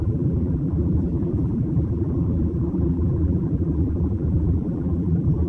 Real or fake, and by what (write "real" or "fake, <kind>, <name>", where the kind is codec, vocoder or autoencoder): fake, vocoder, BigVGAN v2